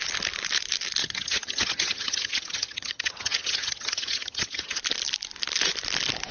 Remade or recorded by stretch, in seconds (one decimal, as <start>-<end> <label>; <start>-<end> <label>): 0.0-1.0 recorded; 1.0-4.8 remade; 4.8-6.3 recorded